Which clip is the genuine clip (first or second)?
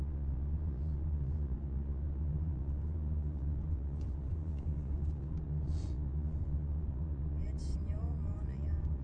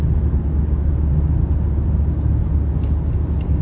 second